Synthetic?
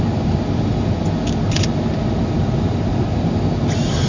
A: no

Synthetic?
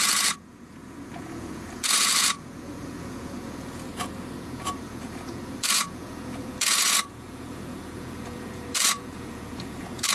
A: yes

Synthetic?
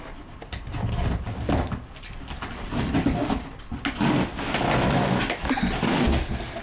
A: no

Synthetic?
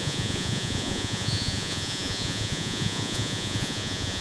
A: yes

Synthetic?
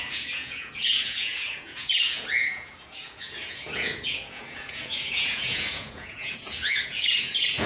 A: yes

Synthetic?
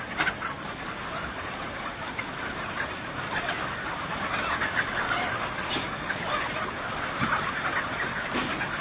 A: no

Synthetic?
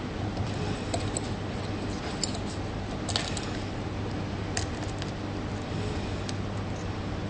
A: no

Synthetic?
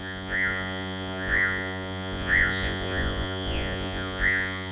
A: yes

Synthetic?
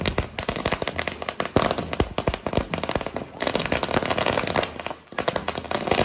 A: no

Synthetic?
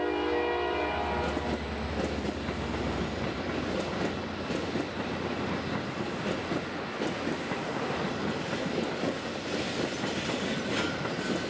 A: no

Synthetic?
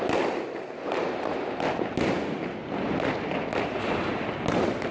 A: no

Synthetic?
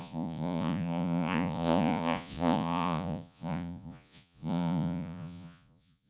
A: yes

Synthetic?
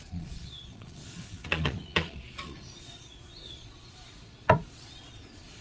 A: yes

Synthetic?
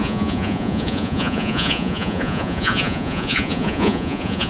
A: yes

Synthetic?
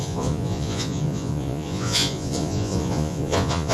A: yes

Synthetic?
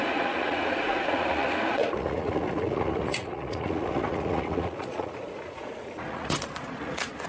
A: yes